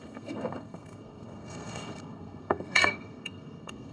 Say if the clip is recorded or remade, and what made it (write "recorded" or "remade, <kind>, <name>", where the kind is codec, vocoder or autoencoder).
remade, codec, SNAC